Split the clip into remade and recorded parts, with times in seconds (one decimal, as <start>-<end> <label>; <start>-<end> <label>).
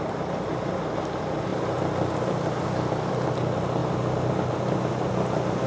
0.0-5.7 recorded